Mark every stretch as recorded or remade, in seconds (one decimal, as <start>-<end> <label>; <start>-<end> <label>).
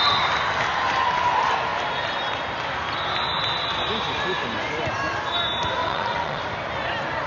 0.0-5.8 recorded; 5.8-6.4 remade; 6.4-7.3 recorded